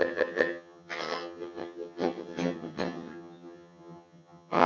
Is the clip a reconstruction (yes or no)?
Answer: yes